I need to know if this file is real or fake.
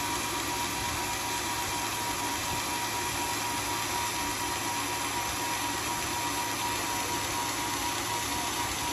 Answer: real